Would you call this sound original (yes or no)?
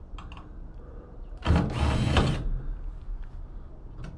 yes